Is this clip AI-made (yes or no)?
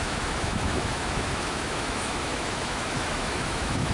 yes